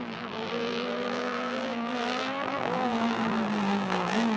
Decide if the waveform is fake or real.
fake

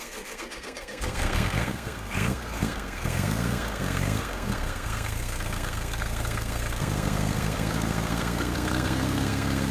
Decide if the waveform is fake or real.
fake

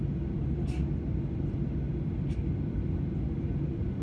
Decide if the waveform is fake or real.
real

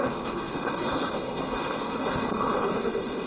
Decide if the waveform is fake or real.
fake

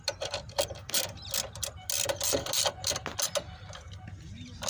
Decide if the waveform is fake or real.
real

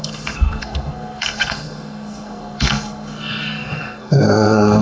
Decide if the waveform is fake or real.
fake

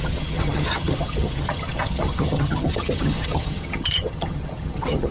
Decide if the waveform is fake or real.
fake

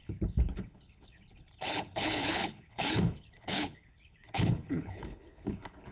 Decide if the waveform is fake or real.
fake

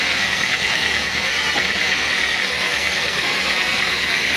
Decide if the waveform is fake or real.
fake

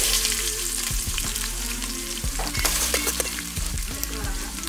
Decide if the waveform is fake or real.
fake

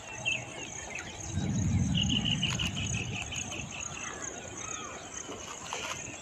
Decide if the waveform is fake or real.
real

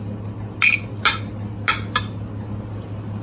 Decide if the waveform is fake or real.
real